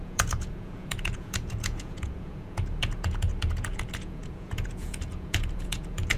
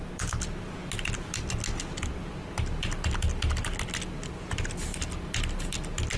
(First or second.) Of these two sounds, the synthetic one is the first